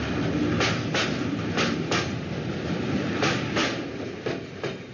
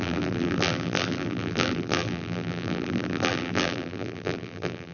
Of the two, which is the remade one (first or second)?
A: second